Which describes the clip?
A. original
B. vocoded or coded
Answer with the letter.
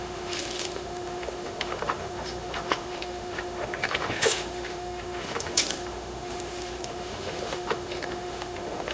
B